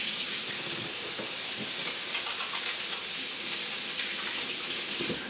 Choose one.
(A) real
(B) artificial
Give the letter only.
A